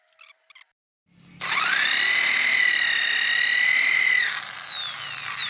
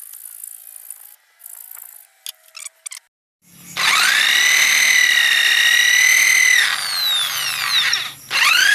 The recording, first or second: second